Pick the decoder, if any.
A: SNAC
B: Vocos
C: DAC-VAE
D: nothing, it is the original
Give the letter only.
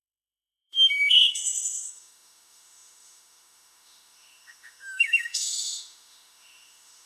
C